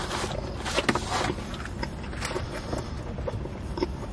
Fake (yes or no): no